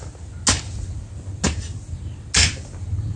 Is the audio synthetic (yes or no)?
no